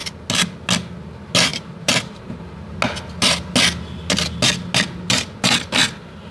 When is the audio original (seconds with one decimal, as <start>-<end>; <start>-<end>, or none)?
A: 0.0-1.5; 2.2-6.3